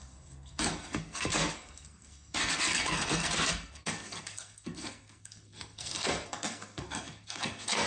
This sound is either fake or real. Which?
fake